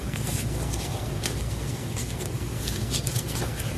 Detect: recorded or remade remade